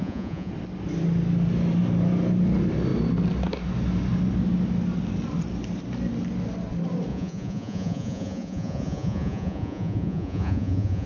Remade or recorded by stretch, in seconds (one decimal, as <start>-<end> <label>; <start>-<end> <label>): 0.0-0.5 remade; 0.5-7.1 recorded; 7.1-11.1 remade